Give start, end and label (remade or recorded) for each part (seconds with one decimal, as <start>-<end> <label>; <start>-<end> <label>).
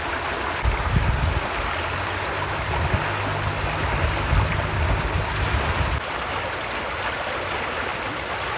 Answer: 0.0-8.6 recorded